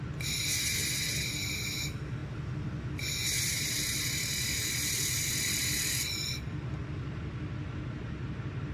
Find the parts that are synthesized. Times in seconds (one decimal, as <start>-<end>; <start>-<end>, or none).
none